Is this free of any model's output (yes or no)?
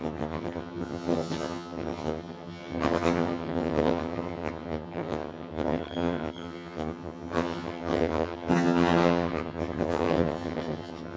no